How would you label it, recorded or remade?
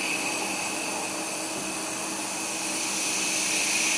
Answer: recorded